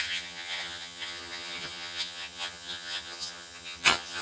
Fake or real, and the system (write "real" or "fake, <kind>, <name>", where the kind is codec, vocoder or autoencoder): fake, vocoder, HiFi-GAN